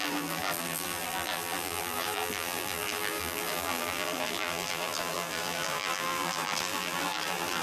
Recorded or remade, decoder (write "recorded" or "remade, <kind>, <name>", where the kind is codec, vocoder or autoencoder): remade, vocoder, BigVGAN v2